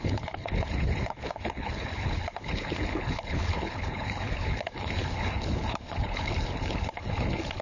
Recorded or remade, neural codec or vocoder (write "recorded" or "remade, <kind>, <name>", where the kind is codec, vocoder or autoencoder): remade, codec, HILCodec